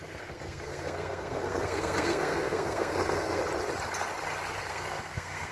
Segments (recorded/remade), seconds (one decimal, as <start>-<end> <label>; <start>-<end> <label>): 0.0-3.4 remade; 3.4-4.7 recorded; 4.7-5.5 remade